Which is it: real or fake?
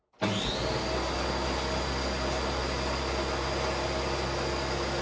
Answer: real